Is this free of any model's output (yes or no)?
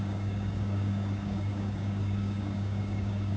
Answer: no